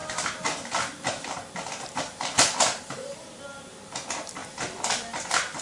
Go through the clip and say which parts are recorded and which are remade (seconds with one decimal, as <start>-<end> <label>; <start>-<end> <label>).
0.0-3.4 remade; 3.4-4.4 recorded; 4.4-5.6 remade